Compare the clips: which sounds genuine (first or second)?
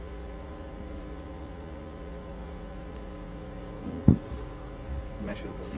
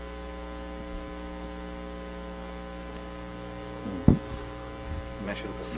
second